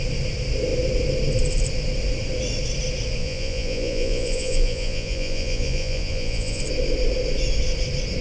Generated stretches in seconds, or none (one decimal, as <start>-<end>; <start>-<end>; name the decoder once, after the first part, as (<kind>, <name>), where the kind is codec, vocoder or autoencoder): 3.2-6.6 (vocoder, Vocos)